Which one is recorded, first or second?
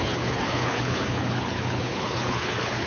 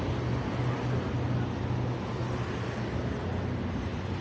second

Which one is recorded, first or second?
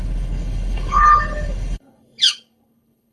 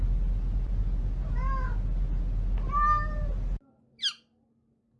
second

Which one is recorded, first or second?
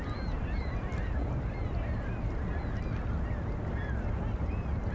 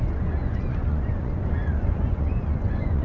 first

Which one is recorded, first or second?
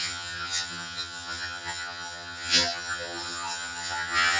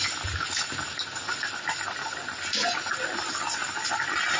second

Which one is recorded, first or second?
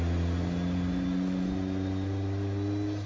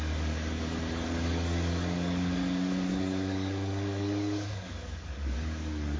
first